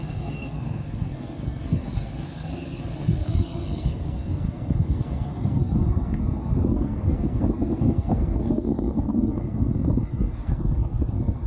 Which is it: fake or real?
fake